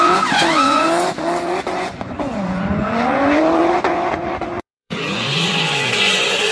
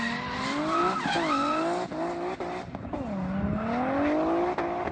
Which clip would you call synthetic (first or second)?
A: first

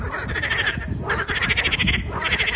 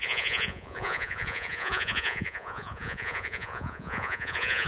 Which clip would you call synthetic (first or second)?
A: second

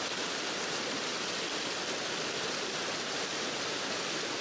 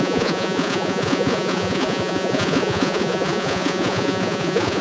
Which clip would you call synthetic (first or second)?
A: second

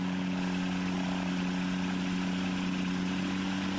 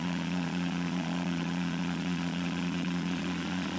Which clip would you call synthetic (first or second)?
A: second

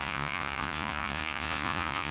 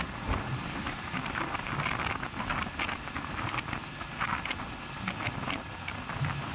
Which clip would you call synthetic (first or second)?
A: first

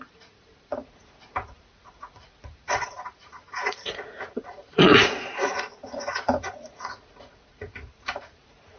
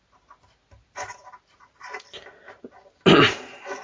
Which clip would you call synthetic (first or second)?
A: first